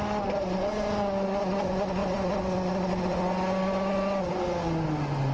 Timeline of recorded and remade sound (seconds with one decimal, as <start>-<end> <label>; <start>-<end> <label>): 0.0-5.3 recorded

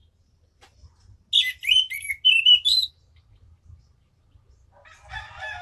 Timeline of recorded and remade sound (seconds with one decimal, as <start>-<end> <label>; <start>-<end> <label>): 0.0-5.6 recorded

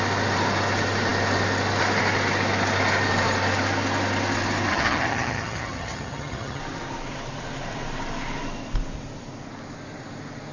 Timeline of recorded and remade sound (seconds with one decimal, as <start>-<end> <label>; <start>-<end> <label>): 0.0-4.7 recorded; 4.7-6.6 remade; 6.6-10.5 recorded

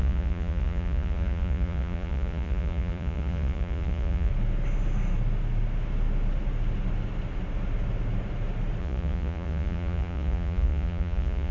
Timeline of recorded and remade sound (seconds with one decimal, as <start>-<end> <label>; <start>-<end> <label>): 0.0-4.3 remade; 4.3-8.8 recorded; 8.8-11.5 remade